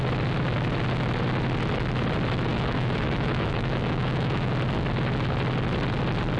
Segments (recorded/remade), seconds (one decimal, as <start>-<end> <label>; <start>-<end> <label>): 0.0-2.5 recorded; 2.5-4.5 remade; 4.5-6.4 recorded